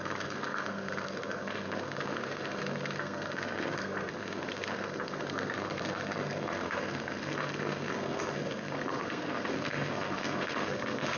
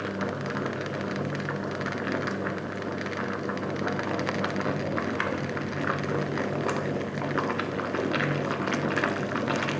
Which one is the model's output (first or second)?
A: first